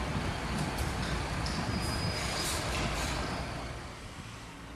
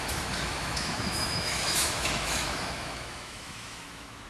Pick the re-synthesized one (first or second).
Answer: second